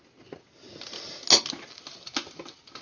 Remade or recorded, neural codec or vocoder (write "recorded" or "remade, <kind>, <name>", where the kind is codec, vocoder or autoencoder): recorded